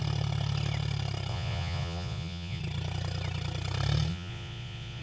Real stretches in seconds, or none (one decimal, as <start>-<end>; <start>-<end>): 0.0-1.3; 2.6-4.1